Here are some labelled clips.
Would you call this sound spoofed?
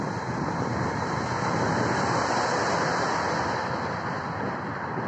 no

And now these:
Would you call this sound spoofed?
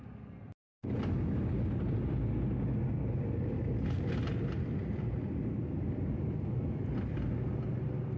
no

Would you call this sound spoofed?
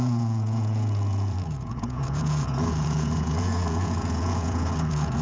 yes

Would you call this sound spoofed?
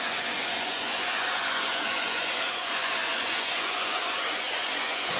yes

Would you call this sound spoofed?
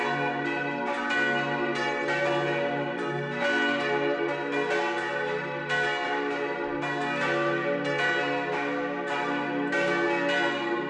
no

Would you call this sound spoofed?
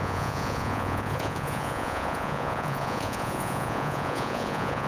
yes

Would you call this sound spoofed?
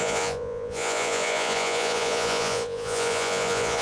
yes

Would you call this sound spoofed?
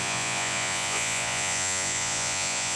yes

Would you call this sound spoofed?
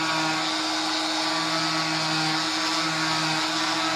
no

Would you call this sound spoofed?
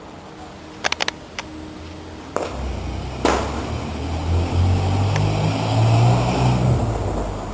no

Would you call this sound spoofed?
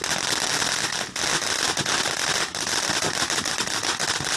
no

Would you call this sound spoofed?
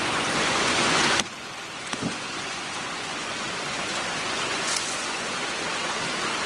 yes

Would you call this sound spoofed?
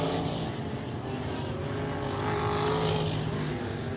no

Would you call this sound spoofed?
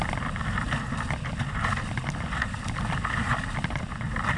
no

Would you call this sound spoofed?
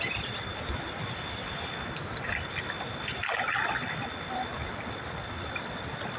no